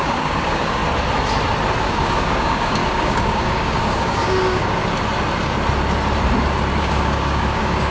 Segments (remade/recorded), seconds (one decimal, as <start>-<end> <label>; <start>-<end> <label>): 0.0-0.8 remade; 0.8-1.8 recorded; 1.8-4.8 remade; 4.8-6.8 recorded; 6.8-7.9 remade